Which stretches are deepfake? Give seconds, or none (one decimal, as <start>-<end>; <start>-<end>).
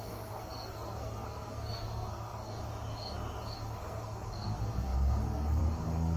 0.0-2.5; 3.6-6.2